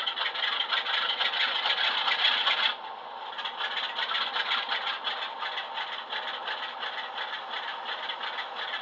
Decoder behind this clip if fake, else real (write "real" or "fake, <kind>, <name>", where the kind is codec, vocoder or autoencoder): real